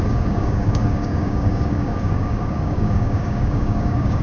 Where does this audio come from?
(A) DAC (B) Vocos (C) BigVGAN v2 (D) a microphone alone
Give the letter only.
A